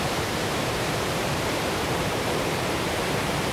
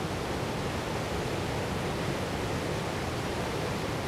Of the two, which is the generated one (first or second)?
first